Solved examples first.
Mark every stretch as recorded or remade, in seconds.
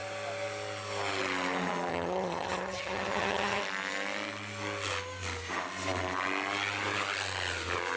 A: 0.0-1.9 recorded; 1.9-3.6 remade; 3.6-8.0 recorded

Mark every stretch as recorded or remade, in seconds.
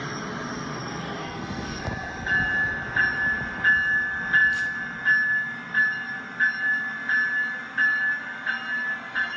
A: 0.0-1.2 recorded; 1.2-1.8 remade; 1.8-9.4 recorded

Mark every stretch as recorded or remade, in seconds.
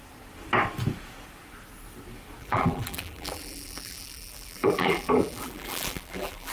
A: 0.0-2.4 recorded; 2.4-6.5 remade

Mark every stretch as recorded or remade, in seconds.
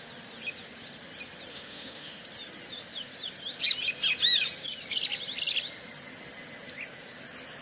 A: 0.0-1.5 recorded; 1.5-2.2 remade; 2.2-7.6 recorded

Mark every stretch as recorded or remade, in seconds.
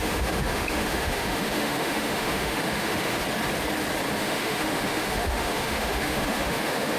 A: 0.0-3.2 remade; 3.2-4.2 recorded; 4.2-7.0 remade